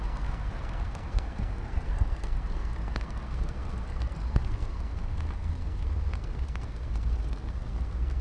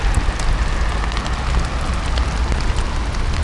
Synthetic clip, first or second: first